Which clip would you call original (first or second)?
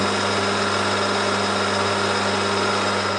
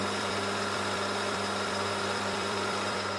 first